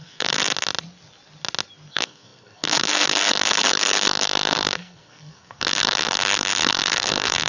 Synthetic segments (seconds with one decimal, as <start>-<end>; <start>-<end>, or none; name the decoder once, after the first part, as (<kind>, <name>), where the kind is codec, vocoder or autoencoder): 0.0-0.4 (codec, SNAC); 1.9-7.5